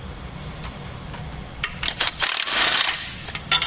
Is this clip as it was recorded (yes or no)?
yes